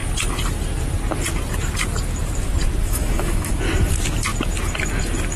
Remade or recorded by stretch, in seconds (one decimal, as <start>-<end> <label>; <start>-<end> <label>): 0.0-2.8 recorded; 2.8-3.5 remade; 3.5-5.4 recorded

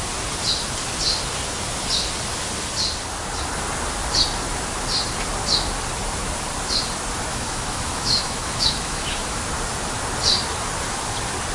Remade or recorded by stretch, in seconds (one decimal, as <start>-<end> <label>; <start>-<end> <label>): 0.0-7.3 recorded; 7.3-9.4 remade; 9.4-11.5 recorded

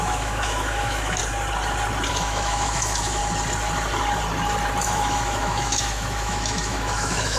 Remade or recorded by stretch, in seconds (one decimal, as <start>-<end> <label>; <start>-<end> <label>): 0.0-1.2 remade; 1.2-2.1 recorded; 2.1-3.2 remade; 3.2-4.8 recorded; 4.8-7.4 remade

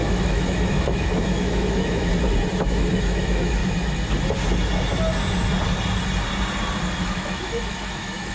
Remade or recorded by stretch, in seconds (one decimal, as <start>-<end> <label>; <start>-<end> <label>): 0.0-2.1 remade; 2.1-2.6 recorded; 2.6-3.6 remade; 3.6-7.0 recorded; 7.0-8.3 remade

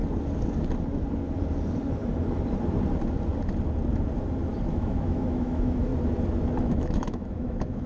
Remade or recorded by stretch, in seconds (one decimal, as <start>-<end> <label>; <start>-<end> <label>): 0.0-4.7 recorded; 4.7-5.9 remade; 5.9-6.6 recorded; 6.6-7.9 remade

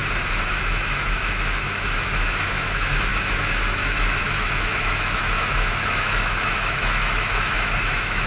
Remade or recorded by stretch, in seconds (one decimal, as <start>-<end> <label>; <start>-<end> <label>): 0.0-0.5 recorded; 0.5-8.3 remade